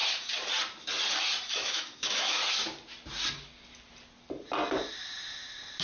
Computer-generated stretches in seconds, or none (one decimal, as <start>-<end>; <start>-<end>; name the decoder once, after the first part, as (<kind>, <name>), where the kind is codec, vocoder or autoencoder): 1.5-2.4 (autoencoder, DAC-VAE)